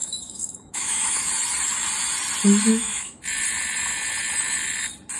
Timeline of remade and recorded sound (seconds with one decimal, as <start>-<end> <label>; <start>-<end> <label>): 0.0-1.3 remade; 1.3-2.7 recorded; 2.7-3.2 remade; 3.2-5.2 recorded